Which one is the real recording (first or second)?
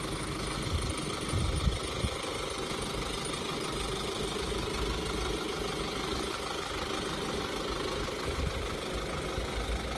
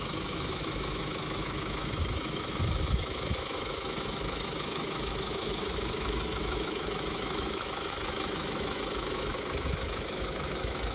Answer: first